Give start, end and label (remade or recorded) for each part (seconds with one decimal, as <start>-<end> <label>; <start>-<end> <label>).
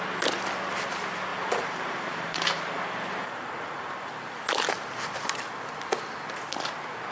0.0-1.3 recorded; 1.3-2.8 remade; 2.8-3.2 recorded; 3.2-4.2 remade; 4.2-7.1 recorded